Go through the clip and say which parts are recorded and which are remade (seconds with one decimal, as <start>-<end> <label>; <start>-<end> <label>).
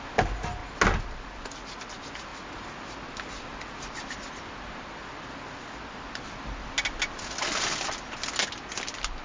0.0-9.2 recorded